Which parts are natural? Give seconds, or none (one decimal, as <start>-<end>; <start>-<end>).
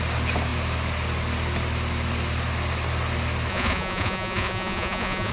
0.0-3.5